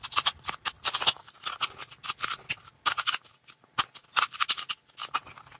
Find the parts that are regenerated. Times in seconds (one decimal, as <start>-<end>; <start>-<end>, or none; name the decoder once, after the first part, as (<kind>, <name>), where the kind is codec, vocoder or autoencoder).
none